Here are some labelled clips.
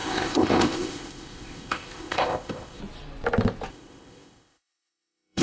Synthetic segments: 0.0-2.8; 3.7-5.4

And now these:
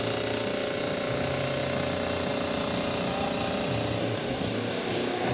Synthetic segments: 4.0-5.3

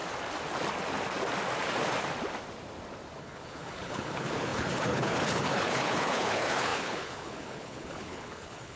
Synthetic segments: 3.2-8.8

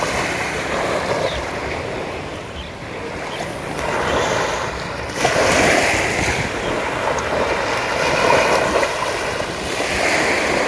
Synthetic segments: none

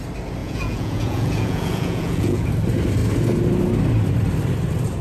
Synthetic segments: 0.4-2.5

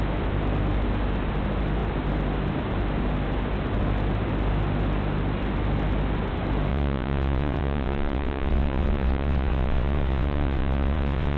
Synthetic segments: 6.7-11.4